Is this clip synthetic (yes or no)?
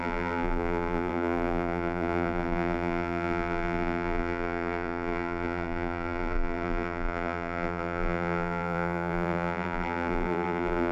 yes